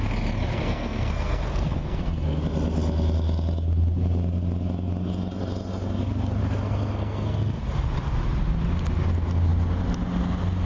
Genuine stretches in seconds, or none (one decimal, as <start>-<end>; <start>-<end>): 0.0-0.5; 2.4-6.4; 7.6-10.7